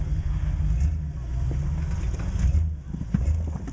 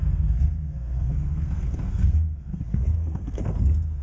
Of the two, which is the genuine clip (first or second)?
first